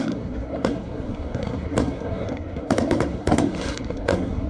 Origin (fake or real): fake